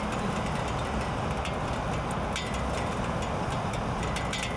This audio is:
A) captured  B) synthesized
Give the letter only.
A